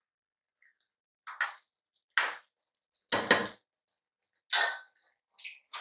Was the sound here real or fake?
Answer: real